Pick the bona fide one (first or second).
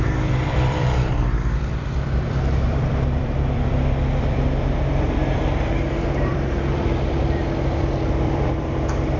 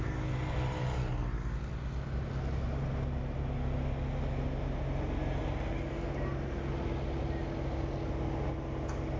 second